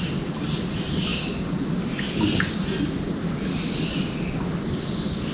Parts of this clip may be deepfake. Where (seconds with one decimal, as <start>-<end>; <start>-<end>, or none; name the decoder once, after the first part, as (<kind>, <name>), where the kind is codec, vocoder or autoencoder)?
none